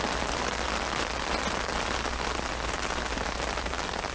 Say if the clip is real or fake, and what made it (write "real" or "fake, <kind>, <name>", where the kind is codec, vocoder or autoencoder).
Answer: real